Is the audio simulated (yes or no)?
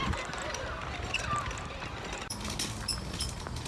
no